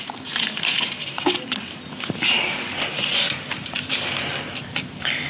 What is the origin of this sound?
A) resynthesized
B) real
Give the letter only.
B